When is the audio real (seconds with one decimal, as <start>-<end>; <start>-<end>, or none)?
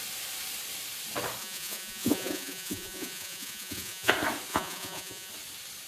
0.0-1.4; 4.1-4.5; 5.3-5.9